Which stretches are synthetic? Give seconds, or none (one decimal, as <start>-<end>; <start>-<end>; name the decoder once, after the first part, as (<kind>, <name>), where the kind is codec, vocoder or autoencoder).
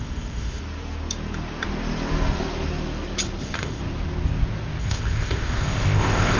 0.0-0.6 (codec, ZipCodec); 3.4-3.8; 4.8-6.4